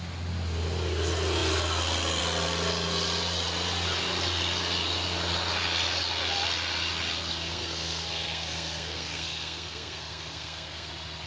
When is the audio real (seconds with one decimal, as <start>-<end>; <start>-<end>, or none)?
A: 0.0-7.3; 10.9-11.3